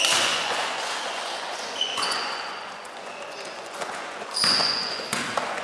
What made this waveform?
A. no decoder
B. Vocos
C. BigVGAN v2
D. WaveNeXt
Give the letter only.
B